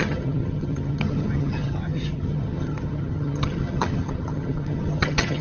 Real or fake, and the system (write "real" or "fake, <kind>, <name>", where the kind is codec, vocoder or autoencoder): fake, vocoder, HiFi-GAN